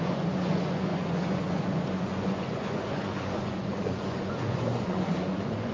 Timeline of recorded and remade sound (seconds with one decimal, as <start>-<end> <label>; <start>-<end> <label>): 0.0-5.7 remade

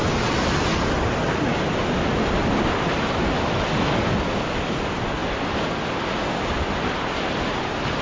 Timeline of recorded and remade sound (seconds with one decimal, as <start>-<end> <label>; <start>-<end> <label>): 0.0-8.0 recorded

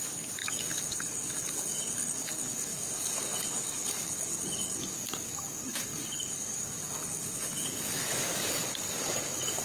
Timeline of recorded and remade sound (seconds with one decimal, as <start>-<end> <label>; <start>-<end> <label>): 0.0-9.6 remade

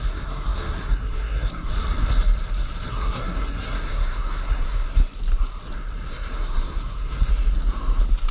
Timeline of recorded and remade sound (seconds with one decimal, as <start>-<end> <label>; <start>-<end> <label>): 0.0-1.7 remade; 1.7-2.9 recorded; 2.9-5.0 remade; 5.0-6.1 recorded; 6.1-7.3 remade; 7.3-8.3 recorded

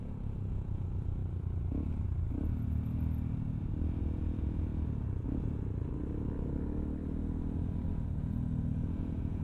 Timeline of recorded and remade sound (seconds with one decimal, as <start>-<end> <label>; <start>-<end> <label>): 0.0-1.2 remade; 1.2-4.0 recorded; 4.0-4.7 remade; 4.7-7.9 recorded; 7.9-9.4 remade

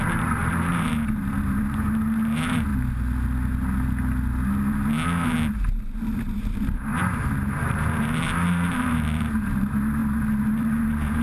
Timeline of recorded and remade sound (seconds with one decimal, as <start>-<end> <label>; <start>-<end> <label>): 0.0-2.7 remade; 2.7-5.5 recorded; 5.5-11.2 remade

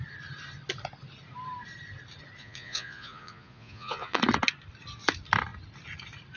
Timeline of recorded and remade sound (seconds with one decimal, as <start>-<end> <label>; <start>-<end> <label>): 0.0-2.4 recorded; 2.4-4.2 remade; 4.2-6.4 recorded